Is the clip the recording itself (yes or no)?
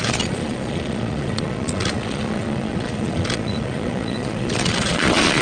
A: no